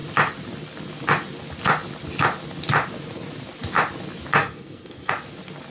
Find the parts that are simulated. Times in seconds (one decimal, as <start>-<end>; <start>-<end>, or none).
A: 4.4-5.1